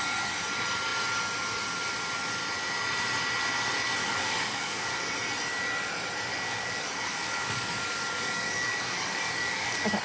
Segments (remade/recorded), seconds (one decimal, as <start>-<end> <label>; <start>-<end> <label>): 0.0-4.0 recorded; 4.0-5.0 remade; 5.0-6.3 recorded; 6.3-10.0 remade